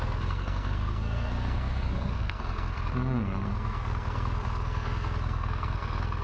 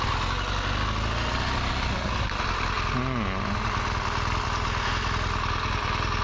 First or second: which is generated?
first